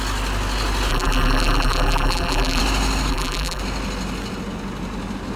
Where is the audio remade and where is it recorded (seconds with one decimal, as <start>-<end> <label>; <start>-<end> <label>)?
0.0-0.9 recorded; 0.9-2.6 remade; 2.6-3.1 recorded; 3.1-3.6 remade; 3.6-5.4 recorded